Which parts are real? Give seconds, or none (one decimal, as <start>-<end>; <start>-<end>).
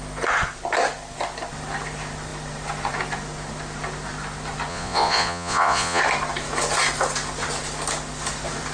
0.0-4.7; 6.0-8.7